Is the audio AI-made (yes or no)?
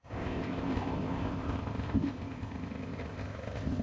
yes